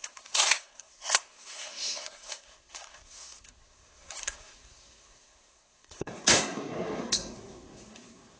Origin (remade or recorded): remade